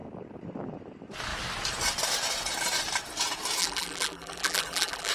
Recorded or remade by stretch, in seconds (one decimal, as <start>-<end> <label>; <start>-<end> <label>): 0.0-3.6 recorded; 3.6-5.1 remade